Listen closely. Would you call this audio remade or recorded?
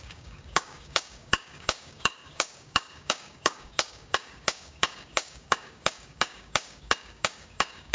remade